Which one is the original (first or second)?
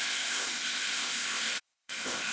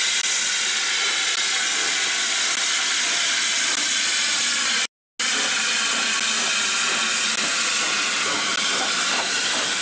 second